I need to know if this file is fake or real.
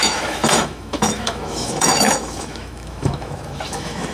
fake